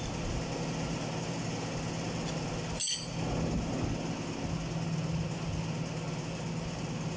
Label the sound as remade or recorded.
recorded